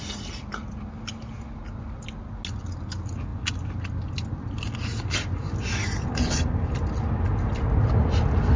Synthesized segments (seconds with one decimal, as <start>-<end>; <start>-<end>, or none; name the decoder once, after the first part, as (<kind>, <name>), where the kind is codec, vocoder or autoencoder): none